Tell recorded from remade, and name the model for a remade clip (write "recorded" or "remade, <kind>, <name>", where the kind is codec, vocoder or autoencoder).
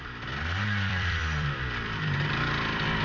remade, vocoder, BigVGAN v2